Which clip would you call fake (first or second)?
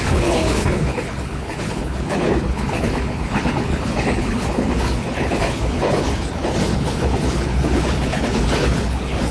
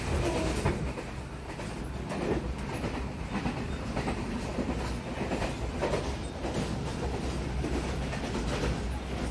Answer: first